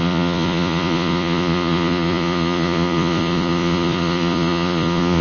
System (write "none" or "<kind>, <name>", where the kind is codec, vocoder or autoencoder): vocoder, Vocos